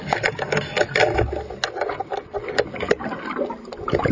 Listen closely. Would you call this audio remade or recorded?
recorded